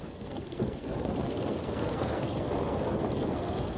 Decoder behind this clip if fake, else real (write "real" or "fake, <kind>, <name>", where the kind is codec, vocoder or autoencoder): fake, codec, SNAC